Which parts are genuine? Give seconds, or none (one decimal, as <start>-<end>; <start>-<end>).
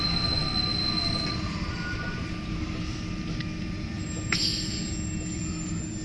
0.0-6.0